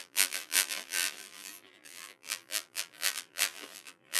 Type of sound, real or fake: fake